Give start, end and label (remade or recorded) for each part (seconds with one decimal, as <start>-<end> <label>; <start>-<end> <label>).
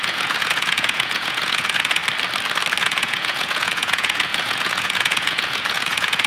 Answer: 0.0-2.0 remade; 2.0-2.8 recorded; 2.8-6.3 remade